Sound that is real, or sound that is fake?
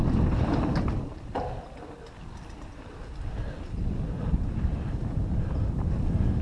real